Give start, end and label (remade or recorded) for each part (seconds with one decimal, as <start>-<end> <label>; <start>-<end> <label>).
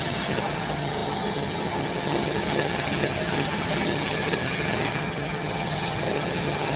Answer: 0.0-6.8 remade